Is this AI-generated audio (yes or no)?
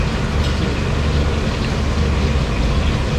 no